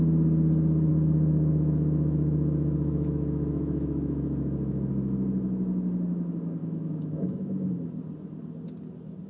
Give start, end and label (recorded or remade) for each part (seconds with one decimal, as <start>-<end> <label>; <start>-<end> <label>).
0.0-0.9 recorded; 0.9-4.9 remade; 4.9-6.6 recorded; 6.6-7.7 remade; 7.7-9.3 recorded